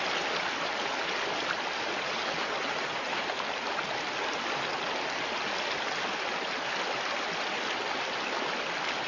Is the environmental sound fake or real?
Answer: real